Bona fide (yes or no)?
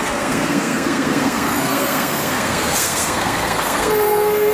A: no